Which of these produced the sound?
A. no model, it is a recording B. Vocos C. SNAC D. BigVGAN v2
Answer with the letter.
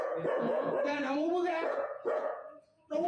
B